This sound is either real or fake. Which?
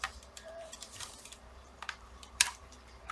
fake